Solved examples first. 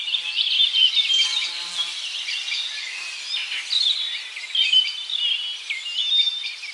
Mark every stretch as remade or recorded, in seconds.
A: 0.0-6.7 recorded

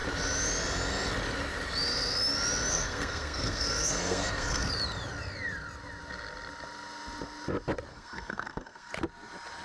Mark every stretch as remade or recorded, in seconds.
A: 0.0-2.7 recorded; 2.7-4.7 remade; 4.7-7.9 recorded; 7.9-8.9 remade; 8.9-9.6 recorded

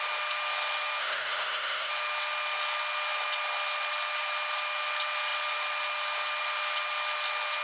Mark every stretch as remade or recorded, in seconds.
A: 0.0-1.0 recorded; 1.0-1.9 remade; 1.9-7.6 recorded

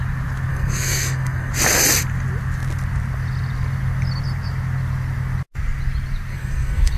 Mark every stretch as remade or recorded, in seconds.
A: 0.0-0.5 recorded; 0.5-1.5 remade; 1.5-6.3 recorded; 6.3-7.0 remade